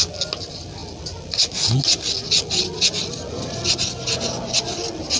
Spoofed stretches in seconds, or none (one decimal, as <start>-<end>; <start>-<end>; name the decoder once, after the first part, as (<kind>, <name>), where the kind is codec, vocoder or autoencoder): none